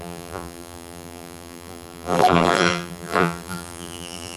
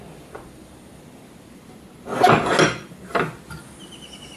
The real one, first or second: second